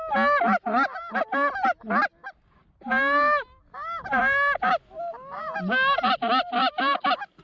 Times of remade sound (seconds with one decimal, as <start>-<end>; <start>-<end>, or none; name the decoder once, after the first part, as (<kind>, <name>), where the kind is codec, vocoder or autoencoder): none